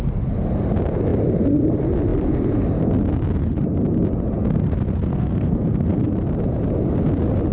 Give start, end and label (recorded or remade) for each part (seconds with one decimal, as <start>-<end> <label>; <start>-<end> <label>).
0.0-5.1 recorded; 5.1-6.0 remade; 6.0-7.5 recorded